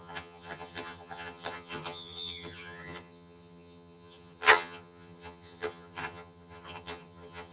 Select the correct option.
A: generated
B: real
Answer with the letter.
A